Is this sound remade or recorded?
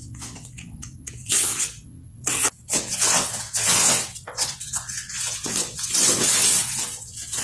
remade